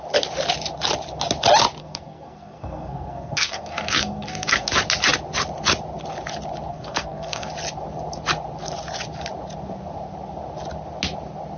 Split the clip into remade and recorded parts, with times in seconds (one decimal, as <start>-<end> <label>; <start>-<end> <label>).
0.0-1.8 recorded; 1.8-4.7 remade; 4.7-6.7 recorded; 6.7-7.5 remade; 7.5-11.6 recorded

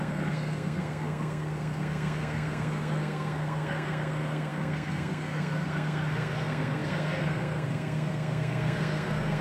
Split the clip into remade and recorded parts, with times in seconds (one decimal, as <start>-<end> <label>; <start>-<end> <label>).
0.0-9.4 remade

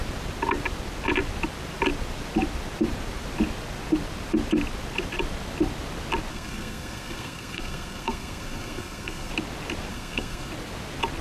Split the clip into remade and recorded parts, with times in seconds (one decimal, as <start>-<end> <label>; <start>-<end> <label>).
0.0-6.3 recorded; 6.3-9.3 remade; 9.3-9.9 recorded; 9.9-10.5 remade; 10.5-11.2 recorded

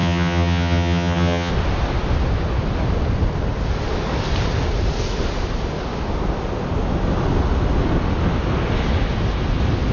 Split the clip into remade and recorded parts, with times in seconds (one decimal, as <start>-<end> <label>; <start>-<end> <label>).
0.0-1.5 remade; 1.5-9.9 recorded

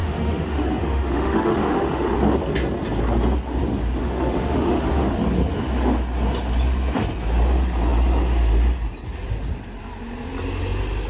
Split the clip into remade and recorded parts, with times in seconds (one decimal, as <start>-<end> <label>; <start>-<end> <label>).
0.0-2.2 remade; 2.2-4.0 recorded; 4.0-5.1 remade; 5.1-11.1 recorded

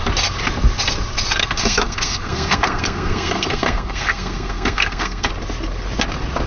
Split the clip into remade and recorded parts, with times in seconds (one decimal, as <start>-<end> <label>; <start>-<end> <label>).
0.0-1.4 recorded; 1.4-5.3 remade; 5.3-6.5 recorded

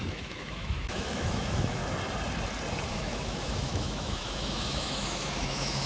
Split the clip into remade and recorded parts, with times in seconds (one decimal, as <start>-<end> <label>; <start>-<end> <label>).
0.0-1.8 remade; 1.8-2.9 recorded; 2.9-5.9 remade